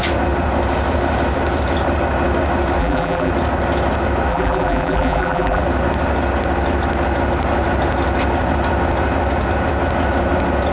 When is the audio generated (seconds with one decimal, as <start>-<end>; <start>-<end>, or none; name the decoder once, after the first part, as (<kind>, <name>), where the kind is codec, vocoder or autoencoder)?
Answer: 2.8-3.3 (vocoder, BigVGAN v2); 4.3-5.6